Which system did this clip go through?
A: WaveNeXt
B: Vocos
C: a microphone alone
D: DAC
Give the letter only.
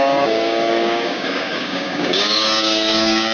D